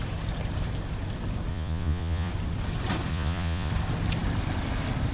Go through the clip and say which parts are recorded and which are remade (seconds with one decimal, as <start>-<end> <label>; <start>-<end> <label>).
0.0-1.5 recorded; 1.5-2.3 remade; 2.3-3.1 recorded; 3.1-3.7 remade; 3.7-5.1 recorded